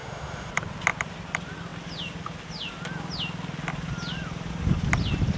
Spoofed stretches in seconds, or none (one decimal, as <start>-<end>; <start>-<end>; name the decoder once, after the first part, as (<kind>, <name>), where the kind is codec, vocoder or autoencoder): 0.0-0.5 (autoencoder, DAC-VAE)